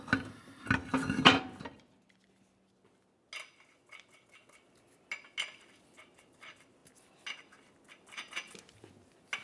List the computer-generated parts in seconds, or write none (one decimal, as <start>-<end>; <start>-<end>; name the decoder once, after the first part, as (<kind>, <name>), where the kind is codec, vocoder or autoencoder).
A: none